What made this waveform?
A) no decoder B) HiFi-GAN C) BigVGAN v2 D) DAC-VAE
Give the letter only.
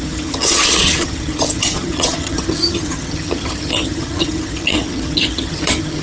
B